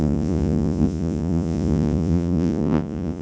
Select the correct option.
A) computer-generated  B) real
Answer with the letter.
A